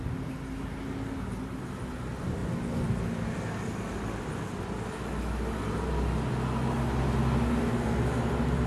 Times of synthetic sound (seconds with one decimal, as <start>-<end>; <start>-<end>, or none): none